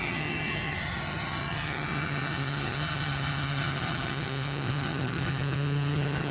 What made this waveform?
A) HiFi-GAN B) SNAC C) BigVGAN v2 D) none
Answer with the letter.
A